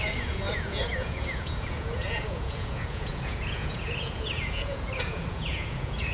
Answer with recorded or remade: remade